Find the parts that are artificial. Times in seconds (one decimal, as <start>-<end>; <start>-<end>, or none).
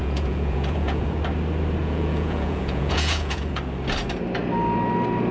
0.0-1.2; 1.8-3.6